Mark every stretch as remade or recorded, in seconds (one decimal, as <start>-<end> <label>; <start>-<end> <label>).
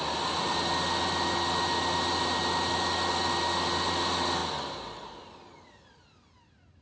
0.0-6.8 recorded